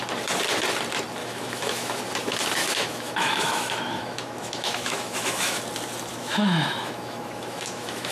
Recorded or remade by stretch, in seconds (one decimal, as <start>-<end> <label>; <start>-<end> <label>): 0.0-1.2 recorded; 1.2-2.0 remade; 2.0-2.6 recorded; 2.6-5.6 remade; 5.6-6.1 recorded; 6.1-8.1 remade